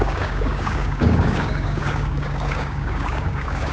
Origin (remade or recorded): remade